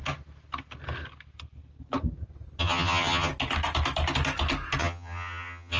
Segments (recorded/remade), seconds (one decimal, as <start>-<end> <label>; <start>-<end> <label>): 0.0-2.6 recorded; 2.6-3.3 remade; 3.3-4.8 recorded; 4.8-5.8 remade